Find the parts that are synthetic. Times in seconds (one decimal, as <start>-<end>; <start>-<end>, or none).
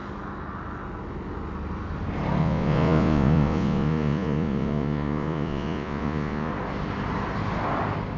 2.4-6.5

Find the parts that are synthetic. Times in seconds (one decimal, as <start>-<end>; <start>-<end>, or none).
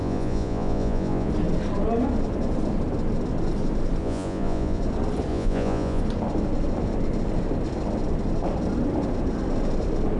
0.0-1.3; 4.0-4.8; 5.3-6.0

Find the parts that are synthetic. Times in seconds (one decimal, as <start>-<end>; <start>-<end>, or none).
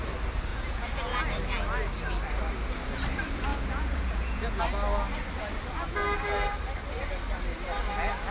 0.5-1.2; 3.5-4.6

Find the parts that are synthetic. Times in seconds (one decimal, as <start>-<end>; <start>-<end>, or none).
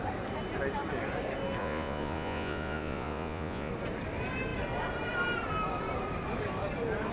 1.6-3.7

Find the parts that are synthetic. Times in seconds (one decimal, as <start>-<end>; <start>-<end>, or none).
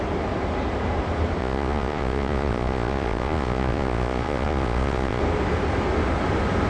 1.4-5.2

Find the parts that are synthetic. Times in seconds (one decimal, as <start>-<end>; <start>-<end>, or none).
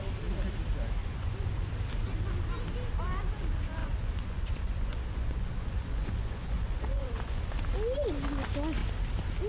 1.0-1.7; 3.8-7.5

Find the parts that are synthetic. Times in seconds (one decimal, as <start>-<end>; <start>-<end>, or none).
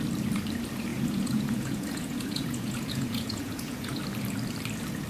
0.9-4.0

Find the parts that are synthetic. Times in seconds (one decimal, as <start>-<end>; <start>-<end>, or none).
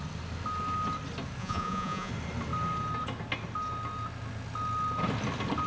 1.4-2.1